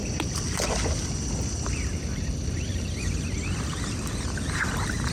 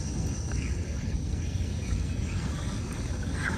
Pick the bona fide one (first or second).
first